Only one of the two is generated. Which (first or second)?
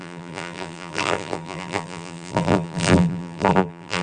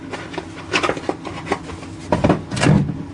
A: first